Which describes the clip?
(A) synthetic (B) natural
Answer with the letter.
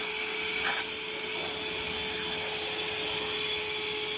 B